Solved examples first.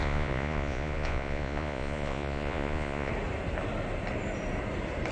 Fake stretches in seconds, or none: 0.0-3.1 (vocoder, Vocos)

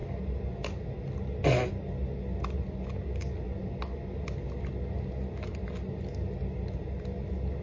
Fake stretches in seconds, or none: none

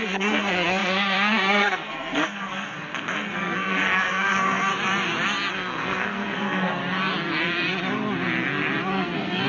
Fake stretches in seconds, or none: 0.0-4.7 (codec, SNAC); 5.5-6.8; 8.9-9.5

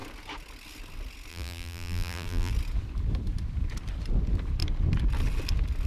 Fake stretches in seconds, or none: 1.3-2.5 (vocoder, BigVGAN v2)

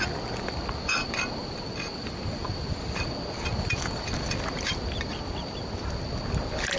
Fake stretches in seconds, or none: none

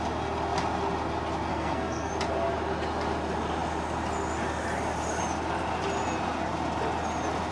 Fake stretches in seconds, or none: 1.5-2.1 (codec, SNAC)

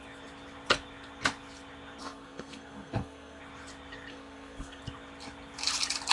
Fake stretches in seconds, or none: 2.0-3.4 (codec, SNAC); 4.1-4.8